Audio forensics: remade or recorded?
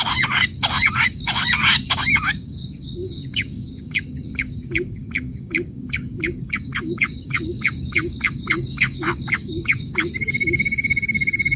remade